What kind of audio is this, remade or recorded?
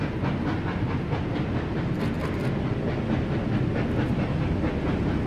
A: recorded